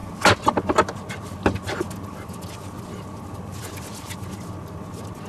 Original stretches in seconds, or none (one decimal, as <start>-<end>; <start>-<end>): 0.0-5.3